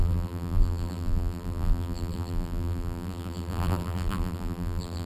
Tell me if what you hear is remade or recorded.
remade